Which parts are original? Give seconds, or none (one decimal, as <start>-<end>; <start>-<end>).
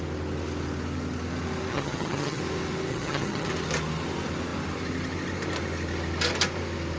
0.0-1.7; 2.4-2.9; 3.5-7.0